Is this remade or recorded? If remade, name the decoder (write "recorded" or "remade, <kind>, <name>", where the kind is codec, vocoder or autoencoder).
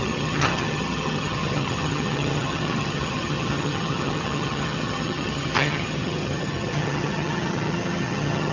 remade, vocoder, HiFi-GAN